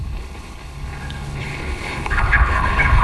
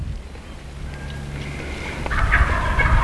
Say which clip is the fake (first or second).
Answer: first